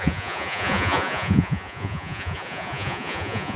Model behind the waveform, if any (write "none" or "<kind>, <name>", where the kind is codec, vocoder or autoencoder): vocoder, Vocos